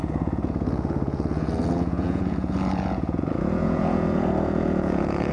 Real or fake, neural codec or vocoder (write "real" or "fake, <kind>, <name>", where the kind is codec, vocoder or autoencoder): fake, vocoder, Vocos